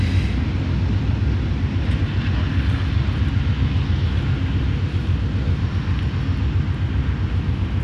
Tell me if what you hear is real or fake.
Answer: real